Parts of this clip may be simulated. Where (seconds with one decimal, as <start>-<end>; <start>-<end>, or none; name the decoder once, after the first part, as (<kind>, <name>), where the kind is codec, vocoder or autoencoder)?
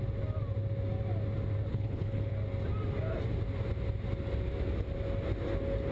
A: 1.7-2.3 (codec, HILCodec)